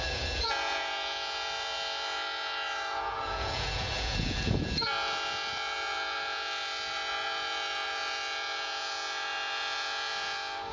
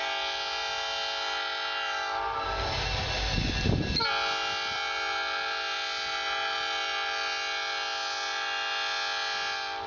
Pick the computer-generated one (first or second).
first